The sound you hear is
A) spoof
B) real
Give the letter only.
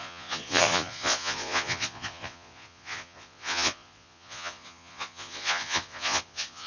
A